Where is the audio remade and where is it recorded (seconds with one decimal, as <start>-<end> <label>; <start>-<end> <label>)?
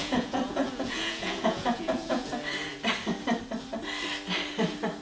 0.0-2.3 remade; 2.3-5.0 recorded